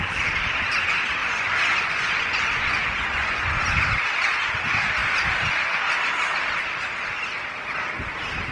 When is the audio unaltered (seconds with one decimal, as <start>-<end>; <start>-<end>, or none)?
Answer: 0.0-1.2; 3.6-8.5